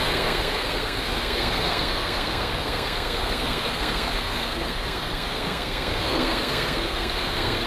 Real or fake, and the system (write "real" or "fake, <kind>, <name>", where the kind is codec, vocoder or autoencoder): fake, codec, SNAC